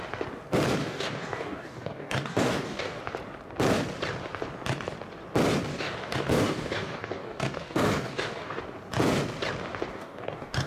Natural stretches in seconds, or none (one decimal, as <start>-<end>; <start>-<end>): 0.0-0.8; 3.0-5.7; 8.6-9.9